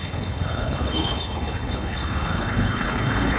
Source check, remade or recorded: remade